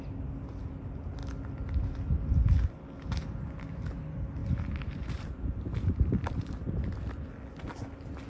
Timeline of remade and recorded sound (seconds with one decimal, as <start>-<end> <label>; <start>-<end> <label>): 0.0-4.4 recorded; 4.4-6.8 remade; 6.8-8.3 recorded